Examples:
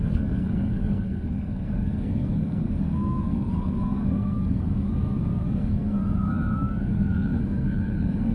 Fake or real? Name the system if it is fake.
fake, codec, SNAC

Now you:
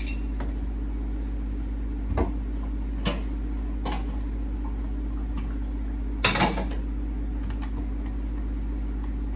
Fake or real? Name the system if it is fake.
real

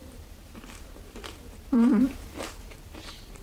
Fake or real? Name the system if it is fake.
fake, vocoder, BigVGAN v2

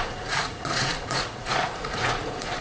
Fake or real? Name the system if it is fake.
fake, vocoder, Vocos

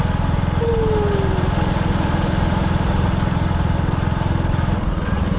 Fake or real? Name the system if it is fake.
real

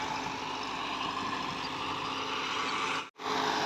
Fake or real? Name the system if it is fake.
real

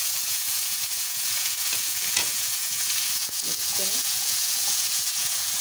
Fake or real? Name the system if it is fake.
fake, vocoder, Vocos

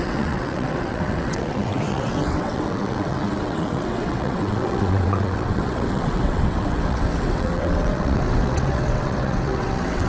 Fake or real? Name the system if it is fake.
fake, vocoder, WaveNeXt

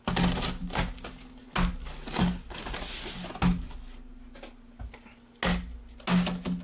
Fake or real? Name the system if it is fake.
real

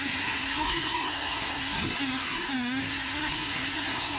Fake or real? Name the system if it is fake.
fake, codec, SNAC